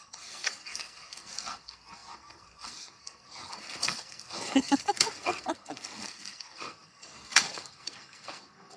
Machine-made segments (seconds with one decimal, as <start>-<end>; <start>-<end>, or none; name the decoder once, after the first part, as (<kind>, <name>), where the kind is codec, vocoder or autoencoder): 0.0-8.8 (codec, SNAC)